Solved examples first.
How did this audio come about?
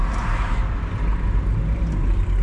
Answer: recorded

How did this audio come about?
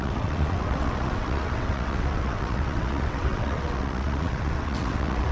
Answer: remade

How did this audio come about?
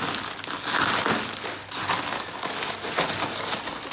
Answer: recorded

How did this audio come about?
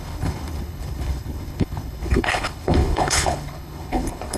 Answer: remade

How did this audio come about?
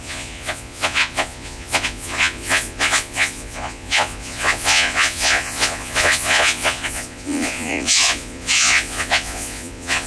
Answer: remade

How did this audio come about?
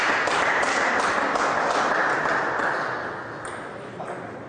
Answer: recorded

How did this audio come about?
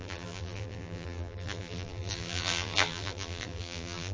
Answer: remade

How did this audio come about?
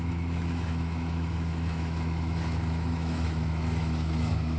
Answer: remade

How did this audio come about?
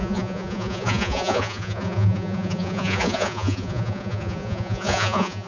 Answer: remade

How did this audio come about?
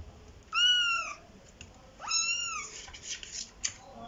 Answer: recorded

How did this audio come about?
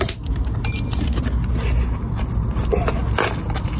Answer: recorded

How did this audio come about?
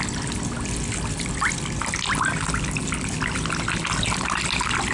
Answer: recorded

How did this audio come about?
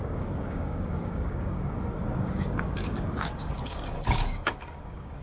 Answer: remade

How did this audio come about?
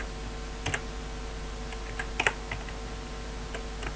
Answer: recorded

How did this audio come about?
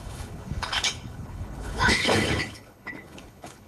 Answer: remade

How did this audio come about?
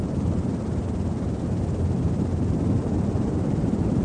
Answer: remade